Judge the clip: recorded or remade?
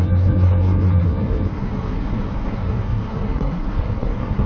remade